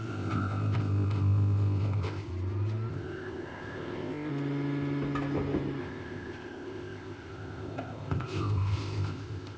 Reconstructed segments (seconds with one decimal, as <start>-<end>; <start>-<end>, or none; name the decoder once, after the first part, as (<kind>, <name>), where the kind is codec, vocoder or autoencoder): 0.0-2.3 (codec, ZipCodec); 2.9-4.3; 5.8-9.6